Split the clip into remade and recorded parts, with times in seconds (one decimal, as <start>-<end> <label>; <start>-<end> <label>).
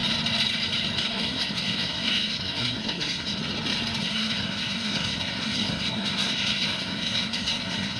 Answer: 0.0-1.0 recorded; 1.0-3.4 remade; 3.4-4.0 recorded; 4.0-8.0 remade